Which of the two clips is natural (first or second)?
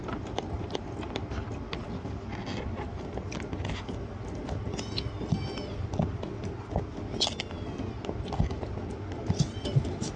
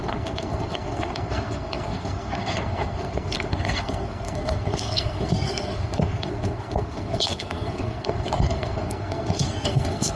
first